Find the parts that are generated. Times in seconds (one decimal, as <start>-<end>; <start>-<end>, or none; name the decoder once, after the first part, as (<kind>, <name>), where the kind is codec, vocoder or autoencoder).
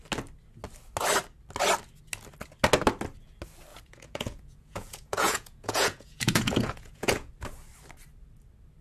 3.7-7.3 (vocoder, Vocos)